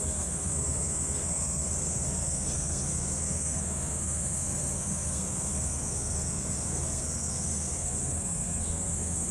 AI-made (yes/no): yes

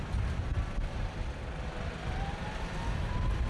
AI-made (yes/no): no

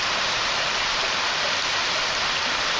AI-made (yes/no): no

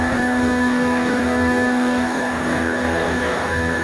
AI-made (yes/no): yes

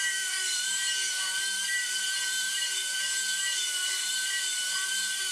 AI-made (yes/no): yes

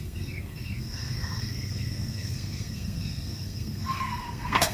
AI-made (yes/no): yes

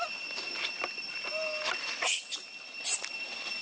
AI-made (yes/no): no